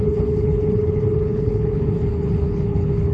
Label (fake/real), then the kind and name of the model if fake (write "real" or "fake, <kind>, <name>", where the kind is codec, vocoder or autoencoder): fake, codec, HILCodec